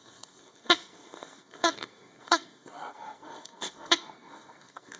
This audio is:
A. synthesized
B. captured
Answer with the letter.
A